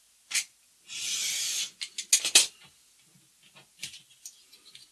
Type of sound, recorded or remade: recorded